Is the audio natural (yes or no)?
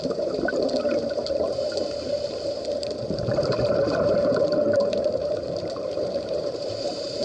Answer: no